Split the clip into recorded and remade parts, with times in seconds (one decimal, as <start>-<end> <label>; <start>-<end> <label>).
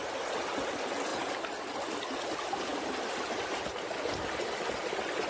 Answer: 0.0-5.3 recorded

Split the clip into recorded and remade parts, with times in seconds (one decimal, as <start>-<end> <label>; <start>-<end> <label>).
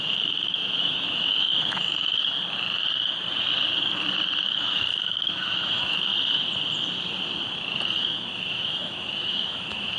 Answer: 0.0-2.2 remade; 2.2-4.4 recorded; 4.4-6.1 remade; 6.1-8.0 recorded; 8.0-10.0 remade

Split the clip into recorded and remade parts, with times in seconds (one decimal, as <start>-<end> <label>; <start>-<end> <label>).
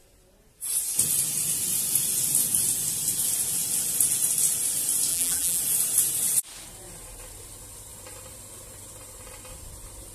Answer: 0.0-5.1 recorded; 5.1-5.6 remade; 5.6-10.1 recorded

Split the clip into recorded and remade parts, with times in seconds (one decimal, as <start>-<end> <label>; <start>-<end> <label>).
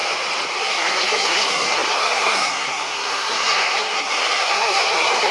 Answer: 0.0-0.6 recorded; 0.6-5.3 remade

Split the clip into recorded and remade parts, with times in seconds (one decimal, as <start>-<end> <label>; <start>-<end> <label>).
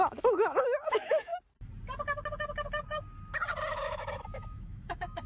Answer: 0.0-1.3 remade; 1.3-3.7 recorded; 3.7-5.3 remade